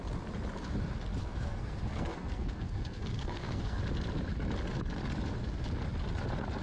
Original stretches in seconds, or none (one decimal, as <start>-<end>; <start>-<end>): 0.0-1.2; 3.8-6.6